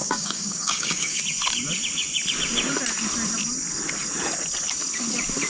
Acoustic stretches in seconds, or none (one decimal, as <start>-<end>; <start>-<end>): 1.2-5.5